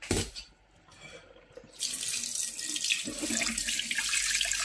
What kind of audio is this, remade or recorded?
recorded